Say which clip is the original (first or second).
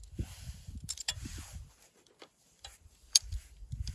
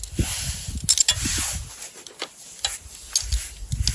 second